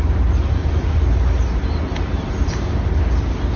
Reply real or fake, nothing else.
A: real